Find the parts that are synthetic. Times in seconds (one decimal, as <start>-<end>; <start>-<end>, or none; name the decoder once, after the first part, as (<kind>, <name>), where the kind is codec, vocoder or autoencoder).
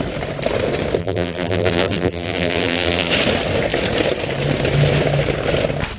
1.0-3.1 (vocoder, BigVGAN v2)